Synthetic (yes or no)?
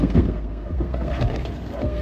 yes